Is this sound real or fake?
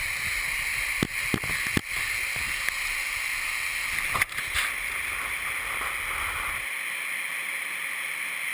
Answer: real